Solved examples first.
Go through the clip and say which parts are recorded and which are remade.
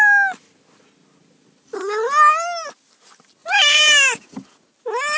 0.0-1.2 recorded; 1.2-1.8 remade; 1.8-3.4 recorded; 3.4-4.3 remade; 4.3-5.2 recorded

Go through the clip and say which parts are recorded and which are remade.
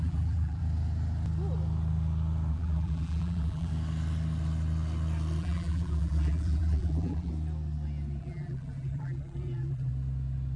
0.0-0.6 remade; 0.6-2.5 recorded; 2.5-3.7 remade; 3.7-5.4 recorded; 5.4-7.3 remade; 7.3-8.2 recorded; 8.2-9.9 remade; 9.9-10.6 recorded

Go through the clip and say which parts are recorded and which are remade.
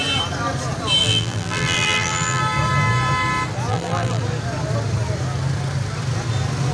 0.0-1.0 recorded; 1.0-2.4 remade; 2.4-3.7 recorded; 3.7-4.2 remade; 4.2-6.7 recorded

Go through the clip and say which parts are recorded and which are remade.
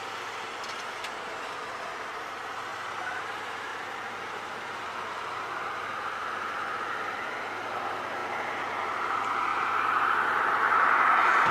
0.0-2.7 recorded; 2.7-3.3 remade; 3.3-3.7 recorded; 3.7-7.0 remade; 7.0-9.5 recorded; 9.5-11.5 remade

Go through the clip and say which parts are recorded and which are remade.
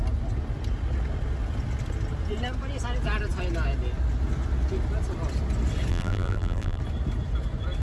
0.0-5.9 recorded; 5.9-6.8 remade; 6.8-7.8 recorded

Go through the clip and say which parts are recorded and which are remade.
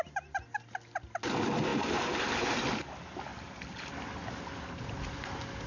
0.0-1.7 recorded; 1.7-2.8 remade; 2.8-5.7 recorded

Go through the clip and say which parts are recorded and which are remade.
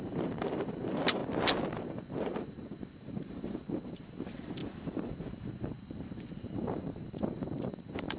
0.0-1.2 remade; 1.2-1.8 recorded; 1.8-4.6 remade; 4.6-5.6 recorded; 5.6-8.2 remade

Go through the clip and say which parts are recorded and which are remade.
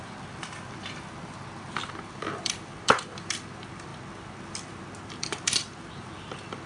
0.0-3.9 remade; 3.9-5.1 recorded; 5.1-6.7 remade